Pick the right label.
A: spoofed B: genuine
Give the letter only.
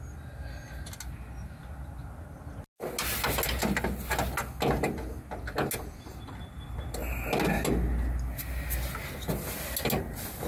B